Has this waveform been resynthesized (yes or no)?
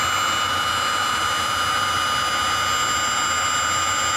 no